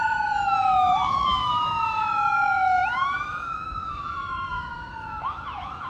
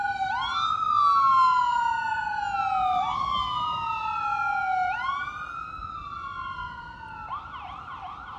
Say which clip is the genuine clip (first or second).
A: second